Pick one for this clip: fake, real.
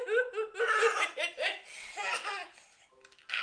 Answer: real